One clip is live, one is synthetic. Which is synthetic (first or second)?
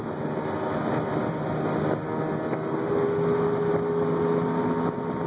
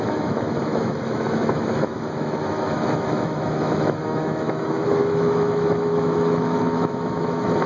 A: second